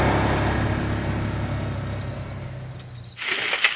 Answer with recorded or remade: recorded